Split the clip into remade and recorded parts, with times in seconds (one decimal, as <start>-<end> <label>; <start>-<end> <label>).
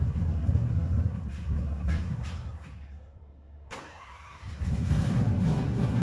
0.0-6.0 remade